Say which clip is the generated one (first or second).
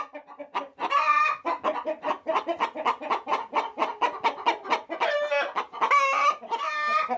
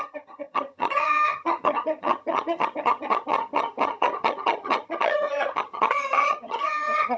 second